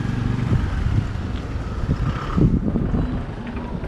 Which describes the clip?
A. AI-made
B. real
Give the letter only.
B